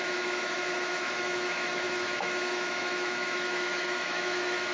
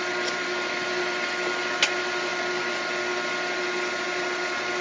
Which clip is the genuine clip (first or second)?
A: second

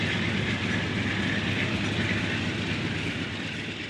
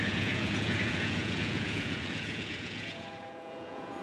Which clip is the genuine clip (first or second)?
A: first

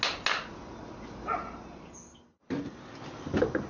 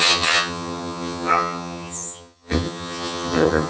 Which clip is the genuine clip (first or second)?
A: first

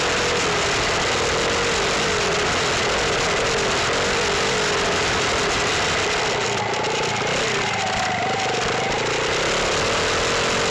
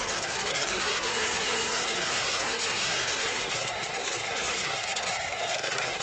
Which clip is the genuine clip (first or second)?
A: first